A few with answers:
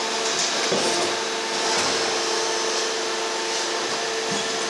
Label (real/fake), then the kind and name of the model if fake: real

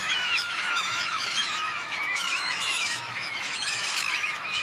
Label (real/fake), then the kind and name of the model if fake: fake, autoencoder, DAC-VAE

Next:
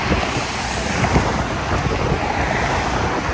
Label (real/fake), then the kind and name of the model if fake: real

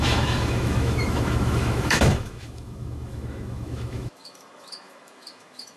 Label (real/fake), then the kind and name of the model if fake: fake, autoencoder, DAC-VAE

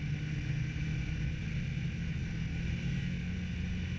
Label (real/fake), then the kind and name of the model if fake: real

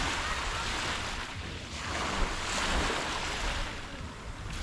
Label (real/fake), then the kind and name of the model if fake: real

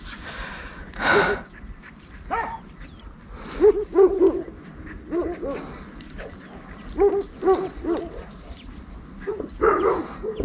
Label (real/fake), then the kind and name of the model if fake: real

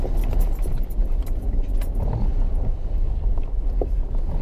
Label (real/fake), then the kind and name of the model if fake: real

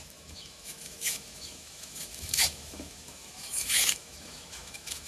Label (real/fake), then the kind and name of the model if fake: fake, autoencoder, DAC-VAE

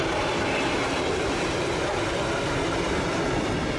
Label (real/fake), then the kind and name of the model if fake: real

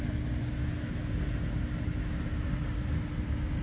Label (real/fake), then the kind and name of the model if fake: real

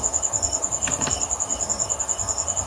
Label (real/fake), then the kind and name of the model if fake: real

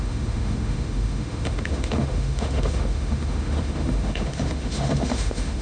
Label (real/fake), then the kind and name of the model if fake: fake, autoencoder, DAC-VAE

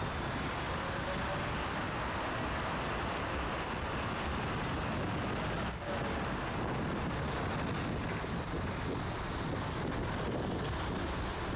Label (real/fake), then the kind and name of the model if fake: real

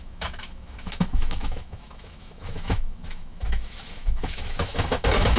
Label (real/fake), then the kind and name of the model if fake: fake, autoencoder, DAC-VAE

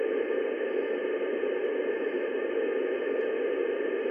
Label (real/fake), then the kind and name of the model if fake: real